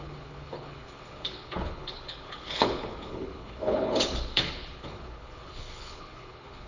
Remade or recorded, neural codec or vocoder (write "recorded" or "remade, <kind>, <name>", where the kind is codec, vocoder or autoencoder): remade, codec, HILCodec